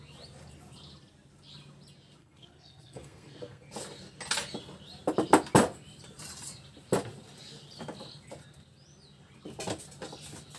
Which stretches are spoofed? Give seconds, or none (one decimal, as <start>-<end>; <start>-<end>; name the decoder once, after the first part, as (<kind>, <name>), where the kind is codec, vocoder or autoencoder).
2.2-3.7 (codec, SNAC)